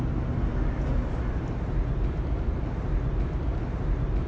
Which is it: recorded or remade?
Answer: recorded